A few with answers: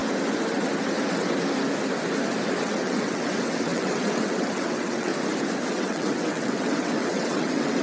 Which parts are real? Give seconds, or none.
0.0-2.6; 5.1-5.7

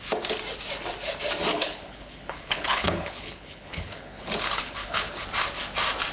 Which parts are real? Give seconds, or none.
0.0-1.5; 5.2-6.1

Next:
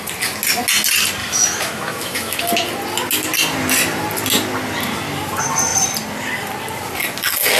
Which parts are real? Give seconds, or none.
0.0-1.2; 2.4-7.6

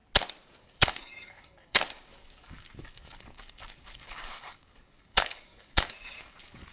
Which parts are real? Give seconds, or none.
0.0-0.6

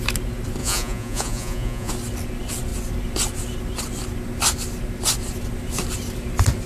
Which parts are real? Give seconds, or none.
0.0-0.6; 1.9-6.7

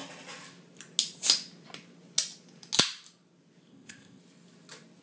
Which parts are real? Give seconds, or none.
0.0-3.7; 4.2-5.0

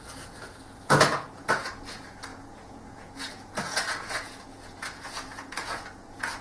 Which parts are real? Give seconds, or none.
none

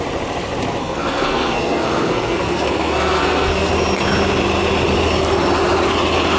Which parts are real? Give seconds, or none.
0.0-0.8; 3.7-6.4